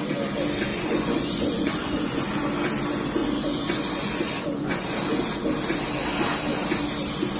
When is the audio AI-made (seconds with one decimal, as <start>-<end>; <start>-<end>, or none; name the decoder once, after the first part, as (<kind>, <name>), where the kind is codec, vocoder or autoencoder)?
0.7-2.5 (vocoder, Vocos); 3.2-5.1